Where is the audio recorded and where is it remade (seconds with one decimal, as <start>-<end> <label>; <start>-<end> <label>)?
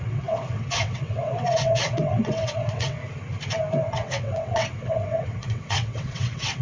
0.0-3.0 remade; 3.0-3.7 recorded; 3.7-6.6 remade